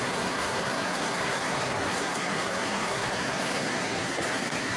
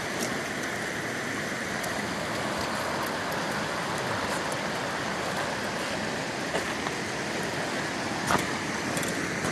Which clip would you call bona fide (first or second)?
second